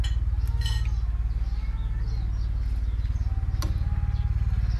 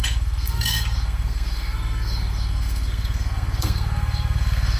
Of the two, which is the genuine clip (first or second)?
first